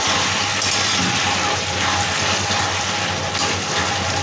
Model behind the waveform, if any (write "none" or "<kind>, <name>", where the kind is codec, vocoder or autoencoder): none